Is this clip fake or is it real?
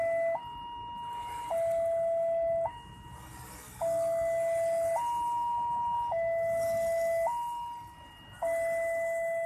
real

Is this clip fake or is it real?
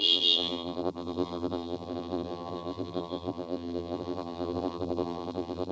fake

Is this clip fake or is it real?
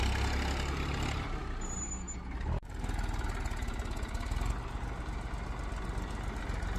real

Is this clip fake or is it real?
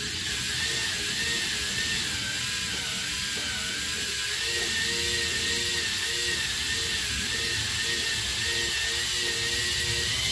real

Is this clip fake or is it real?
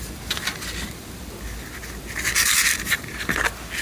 real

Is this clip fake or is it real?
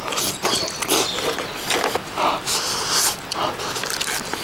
real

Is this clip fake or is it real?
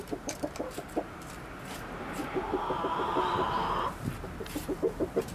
fake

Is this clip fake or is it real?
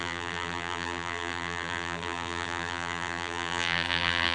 fake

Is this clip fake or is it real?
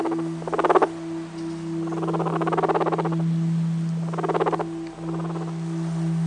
real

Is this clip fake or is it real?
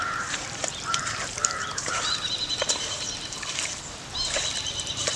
fake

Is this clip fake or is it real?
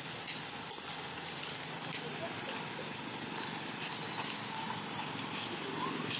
real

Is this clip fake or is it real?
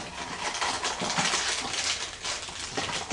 real